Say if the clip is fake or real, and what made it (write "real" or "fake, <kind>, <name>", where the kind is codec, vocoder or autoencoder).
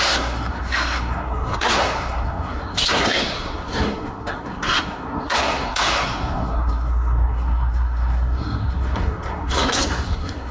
fake, codec, SNAC